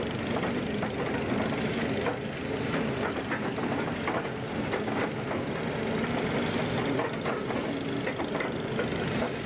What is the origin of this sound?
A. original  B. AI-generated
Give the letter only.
A